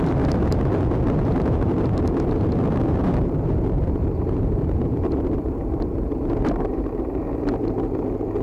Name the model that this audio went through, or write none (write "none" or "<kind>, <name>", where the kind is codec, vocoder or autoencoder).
vocoder, BigVGAN v2